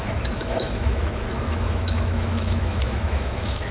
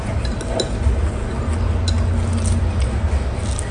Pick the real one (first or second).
second